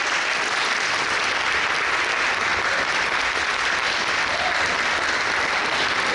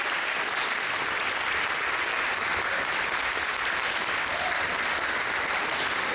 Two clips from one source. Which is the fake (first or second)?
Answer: second